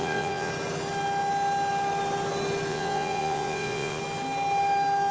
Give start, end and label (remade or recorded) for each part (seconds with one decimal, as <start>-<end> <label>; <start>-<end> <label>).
0.0-0.5 remade; 0.5-2.7 recorded; 2.7-4.0 remade; 4.0-5.1 recorded